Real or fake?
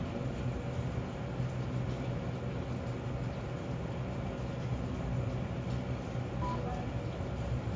real